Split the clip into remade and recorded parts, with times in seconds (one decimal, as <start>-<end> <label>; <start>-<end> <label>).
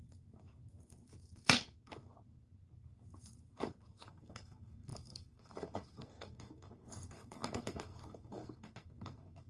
0.0-9.5 remade